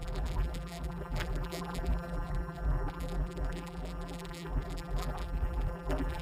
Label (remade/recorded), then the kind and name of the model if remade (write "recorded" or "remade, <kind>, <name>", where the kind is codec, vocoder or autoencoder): remade, vocoder, BigVGAN v2